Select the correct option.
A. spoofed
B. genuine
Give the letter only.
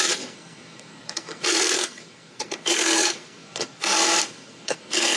A